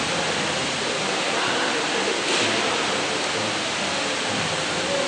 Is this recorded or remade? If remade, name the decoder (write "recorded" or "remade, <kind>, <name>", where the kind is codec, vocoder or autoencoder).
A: recorded